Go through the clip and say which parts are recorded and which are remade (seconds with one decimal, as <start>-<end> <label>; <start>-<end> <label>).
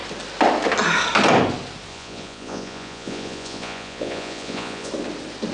0.0-1.9 recorded; 1.9-4.9 remade; 4.9-5.5 recorded